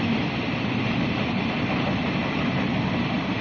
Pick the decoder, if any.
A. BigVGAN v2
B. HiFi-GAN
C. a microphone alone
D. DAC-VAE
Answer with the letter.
A